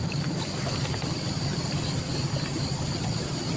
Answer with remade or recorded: recorded